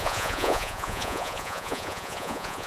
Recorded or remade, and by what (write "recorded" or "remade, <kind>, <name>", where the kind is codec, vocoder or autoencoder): remade, vocoder, Vocos